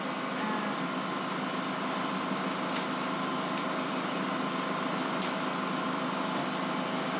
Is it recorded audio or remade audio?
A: recorded